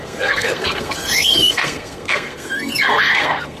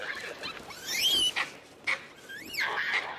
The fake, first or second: first